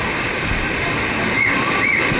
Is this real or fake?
real